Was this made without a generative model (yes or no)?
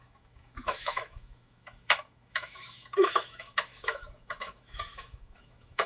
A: no